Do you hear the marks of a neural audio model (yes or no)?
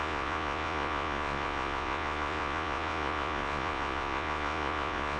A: yes